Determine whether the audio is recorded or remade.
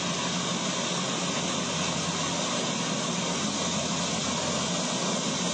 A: recorded